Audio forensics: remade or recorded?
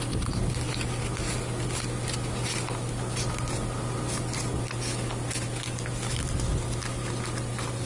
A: recorded